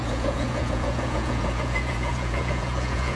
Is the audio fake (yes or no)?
yes